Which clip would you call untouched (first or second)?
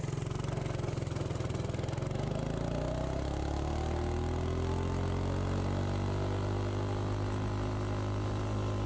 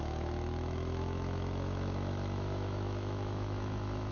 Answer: first